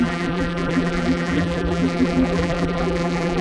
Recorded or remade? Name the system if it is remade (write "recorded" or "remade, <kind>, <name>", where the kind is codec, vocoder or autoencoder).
remade, vocoder, BigVGAN v2